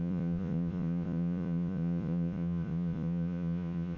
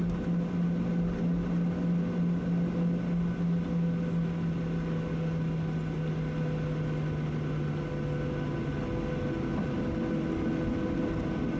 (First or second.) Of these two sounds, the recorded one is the second